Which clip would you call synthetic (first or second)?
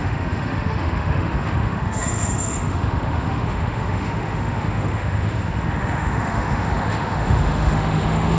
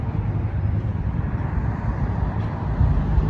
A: first